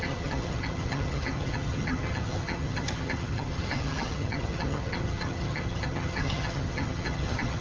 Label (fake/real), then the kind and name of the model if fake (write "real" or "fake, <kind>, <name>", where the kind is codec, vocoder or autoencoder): fake, vocoder, HiFi-GAN